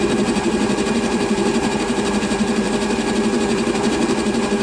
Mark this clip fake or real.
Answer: fake